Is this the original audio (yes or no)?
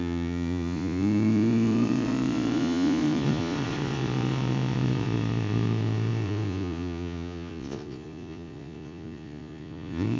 no